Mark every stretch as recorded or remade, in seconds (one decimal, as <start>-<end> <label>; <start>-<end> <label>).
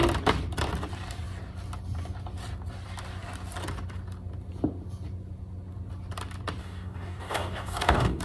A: 0.0-6.6 recorded; 6.6-8.2 remade